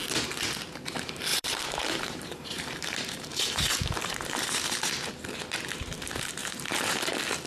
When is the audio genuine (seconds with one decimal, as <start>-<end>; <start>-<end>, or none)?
0.0-1.3; 4.9-6.4; 7.1-7.5